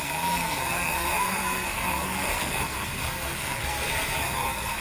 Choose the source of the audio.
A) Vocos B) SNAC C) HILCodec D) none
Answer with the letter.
B